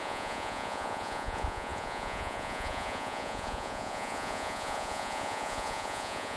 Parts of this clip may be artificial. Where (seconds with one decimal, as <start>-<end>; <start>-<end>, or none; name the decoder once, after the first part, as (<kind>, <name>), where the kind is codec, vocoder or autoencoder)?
0.0-6.4 (vocoder, Vocos)